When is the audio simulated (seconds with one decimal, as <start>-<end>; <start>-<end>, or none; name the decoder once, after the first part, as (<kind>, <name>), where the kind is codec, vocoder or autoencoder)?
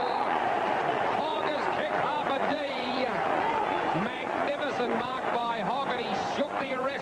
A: 0.0-5.4 (vocoder, Vocos); 6.0-7.0